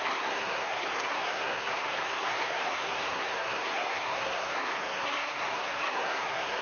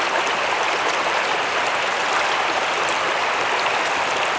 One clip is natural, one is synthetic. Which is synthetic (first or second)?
first